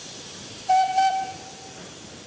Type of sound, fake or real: real